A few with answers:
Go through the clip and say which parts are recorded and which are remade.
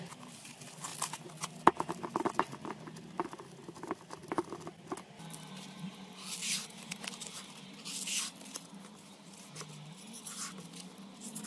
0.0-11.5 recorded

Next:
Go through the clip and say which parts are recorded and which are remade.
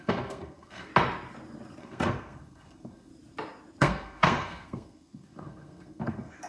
0.0-0.9 remade; 0.9-1.8 recorded; 1.8-3.1 remade; 3.1-3.8 recorded; 3.8-6.5 remade